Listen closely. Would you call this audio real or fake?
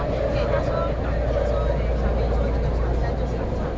real